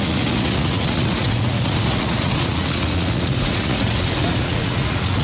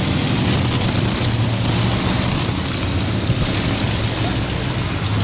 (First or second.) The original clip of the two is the second